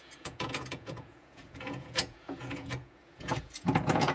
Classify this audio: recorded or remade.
remade